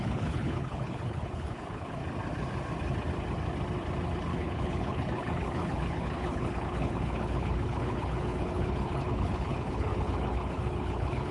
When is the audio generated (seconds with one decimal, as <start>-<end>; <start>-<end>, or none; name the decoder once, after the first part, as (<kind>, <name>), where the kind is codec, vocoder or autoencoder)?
0.0-2.0 (codec, HILCodec); 4.2-11.3

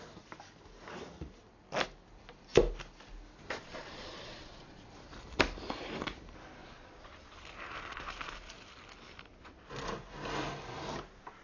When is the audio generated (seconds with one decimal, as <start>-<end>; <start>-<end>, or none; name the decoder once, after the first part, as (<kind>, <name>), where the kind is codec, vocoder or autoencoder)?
3.7-4.9 (vocoder, Vocos); 6.6-7.1

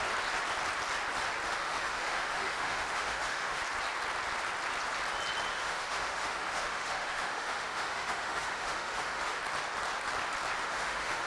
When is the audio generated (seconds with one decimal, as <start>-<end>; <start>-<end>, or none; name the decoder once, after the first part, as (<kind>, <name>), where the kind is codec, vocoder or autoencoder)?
1.6-3.6 (autoencoder, DAC-VAE); 5.5-9.4; 10.6-11.3

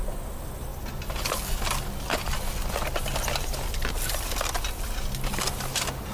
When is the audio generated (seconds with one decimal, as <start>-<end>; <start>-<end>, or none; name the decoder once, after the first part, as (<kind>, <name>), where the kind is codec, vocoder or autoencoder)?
none

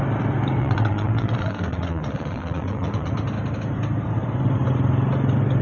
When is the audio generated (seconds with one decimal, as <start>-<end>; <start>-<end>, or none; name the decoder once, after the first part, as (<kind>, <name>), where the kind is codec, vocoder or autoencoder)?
0.6-3.1 (vocoder, WaveNeXt)

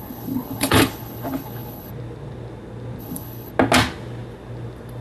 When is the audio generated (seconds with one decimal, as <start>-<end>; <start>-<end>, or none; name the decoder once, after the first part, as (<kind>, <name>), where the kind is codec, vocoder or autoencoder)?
0.0-1.9 (codec, HILCodec); 3.0-3.5

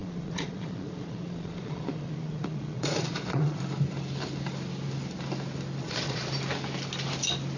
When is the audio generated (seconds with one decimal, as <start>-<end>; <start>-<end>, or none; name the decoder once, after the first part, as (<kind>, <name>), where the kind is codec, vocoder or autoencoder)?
0.0-3.6 (vocoder, Vocos); 5.8-6.3